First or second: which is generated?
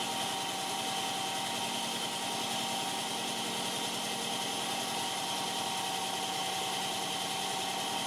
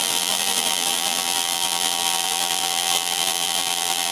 second